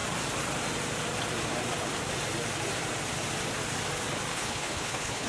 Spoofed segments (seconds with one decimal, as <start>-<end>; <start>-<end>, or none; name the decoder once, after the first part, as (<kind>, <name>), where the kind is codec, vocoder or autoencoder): 4.3-5.3 (codec, HILCodec)